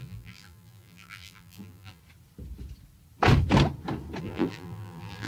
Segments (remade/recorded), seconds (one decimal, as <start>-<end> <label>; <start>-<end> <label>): 0.0-2.0 remade; 2.0-4.2 recorded; 4.2-5.3 remade